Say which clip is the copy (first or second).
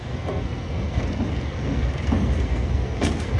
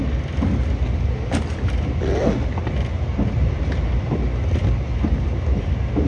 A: first